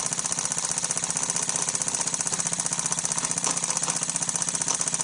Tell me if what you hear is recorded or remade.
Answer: recorded